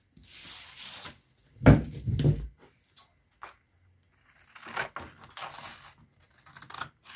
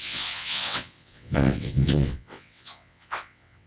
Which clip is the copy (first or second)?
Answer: second